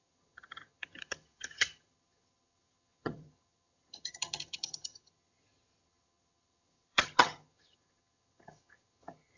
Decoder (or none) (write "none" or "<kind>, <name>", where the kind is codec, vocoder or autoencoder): vocoder, HiFi-GAN